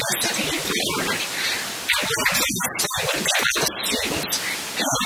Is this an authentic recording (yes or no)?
yes